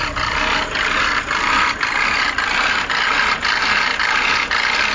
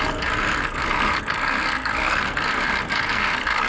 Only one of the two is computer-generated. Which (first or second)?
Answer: second